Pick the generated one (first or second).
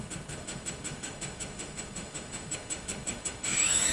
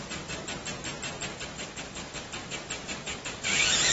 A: first